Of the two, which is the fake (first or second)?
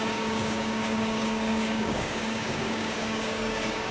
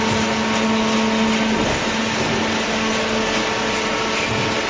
first